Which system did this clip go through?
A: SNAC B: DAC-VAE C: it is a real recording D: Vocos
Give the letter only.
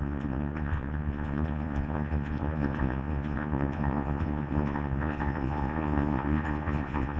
D